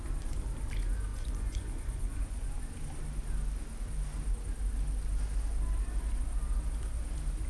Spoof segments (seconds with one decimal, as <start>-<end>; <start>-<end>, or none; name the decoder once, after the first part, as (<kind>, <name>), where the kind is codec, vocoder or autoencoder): 1.1-2.5 (vocoder, Vocos)